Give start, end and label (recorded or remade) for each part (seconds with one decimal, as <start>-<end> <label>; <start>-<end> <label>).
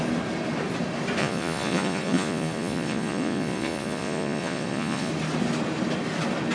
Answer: 0.0-1.2 recorded; 1.2-5.1 remade; 5.1-6.5 recorded